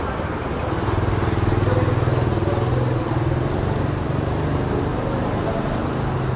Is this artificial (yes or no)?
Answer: no